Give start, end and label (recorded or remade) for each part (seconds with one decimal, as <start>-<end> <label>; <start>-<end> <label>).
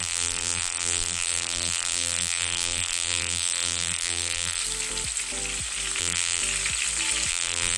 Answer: 0.0-4.6 remade; 4.6-6.0 recorded; 6.0-6.4 remade; 6.4-7.3 recorded; 7.3-7.8 remade